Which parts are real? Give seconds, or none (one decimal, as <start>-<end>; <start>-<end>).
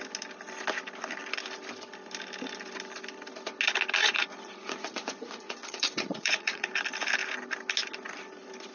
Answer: 0.0-4.0; 6.7-8.7